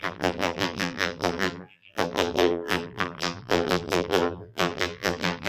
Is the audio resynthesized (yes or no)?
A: yes